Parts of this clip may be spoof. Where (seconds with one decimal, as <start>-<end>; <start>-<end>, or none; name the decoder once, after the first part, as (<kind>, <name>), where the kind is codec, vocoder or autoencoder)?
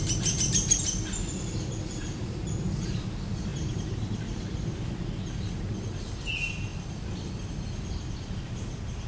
none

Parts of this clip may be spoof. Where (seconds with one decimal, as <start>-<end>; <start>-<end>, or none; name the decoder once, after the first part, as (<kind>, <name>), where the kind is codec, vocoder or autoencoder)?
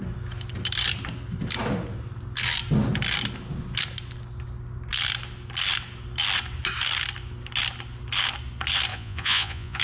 8.9-9.8 (vocoder, Vocos)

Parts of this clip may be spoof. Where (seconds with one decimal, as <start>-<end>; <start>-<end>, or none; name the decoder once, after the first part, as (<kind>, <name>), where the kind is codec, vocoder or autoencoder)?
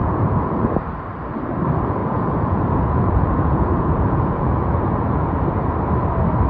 0.0-0.8 (vocoder, Vocos); 2.0-5.4